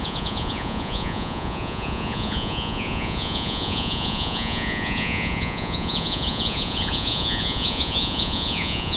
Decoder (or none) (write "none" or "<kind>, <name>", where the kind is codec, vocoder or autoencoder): vocoder, Vocos